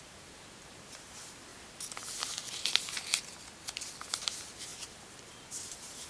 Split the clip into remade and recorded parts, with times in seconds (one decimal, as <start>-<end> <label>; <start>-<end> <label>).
0.0-1.5 remade; 1.5-4.1 recorded; 4.1-6.1 remade